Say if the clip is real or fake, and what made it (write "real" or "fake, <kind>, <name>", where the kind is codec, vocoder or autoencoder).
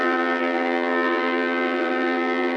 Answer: fake, vocoder, BigVGAN v2